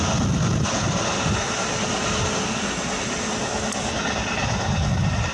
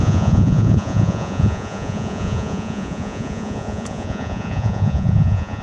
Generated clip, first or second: second